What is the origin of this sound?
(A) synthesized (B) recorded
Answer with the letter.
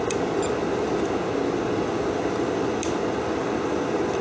B